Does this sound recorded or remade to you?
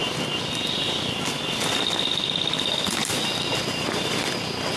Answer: recorded